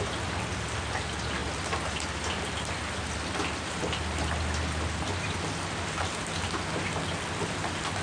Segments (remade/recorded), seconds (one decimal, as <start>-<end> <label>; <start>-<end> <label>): 0.0-8.0 recorded

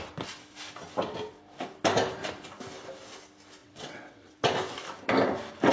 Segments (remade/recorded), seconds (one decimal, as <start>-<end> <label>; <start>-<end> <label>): 0.0-3.6 recorded; 3.6-4.5 remade; 4.5-5.7 recorded

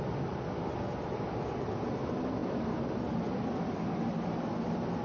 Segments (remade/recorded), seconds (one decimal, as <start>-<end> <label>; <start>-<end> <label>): 0.0-5.0 recorded

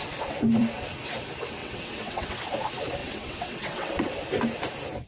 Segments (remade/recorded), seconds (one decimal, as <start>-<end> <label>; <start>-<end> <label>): 0.0-1.6 recorded; 1.6-2.4 remade; 2.4-3.0 recorded; 3.0-4.1 remade; 4.1-5.1 recorded

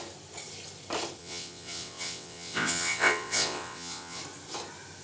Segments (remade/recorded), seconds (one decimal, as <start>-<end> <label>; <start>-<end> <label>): 0.0-1.2 recorded; 1.2-4.2 remade; 4.2-5.0 recorded

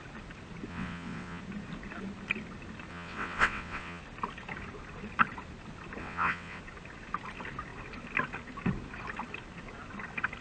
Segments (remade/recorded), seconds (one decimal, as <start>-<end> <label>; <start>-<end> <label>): 0.0-0.7 recorded; 0.7-1.4 remade; 1.4-2.9 recorded; 2.9-4.0 remade; 4.0-6.0 recorded; 6.0-6.6 remade; 6.6-10.4 recorded